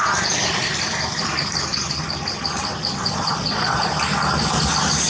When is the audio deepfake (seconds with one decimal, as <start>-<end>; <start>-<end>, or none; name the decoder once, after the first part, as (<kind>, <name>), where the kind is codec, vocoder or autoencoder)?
3.0-3.8 (vocoder, Vocos)